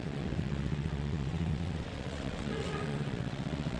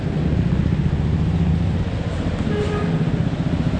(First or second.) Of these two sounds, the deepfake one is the first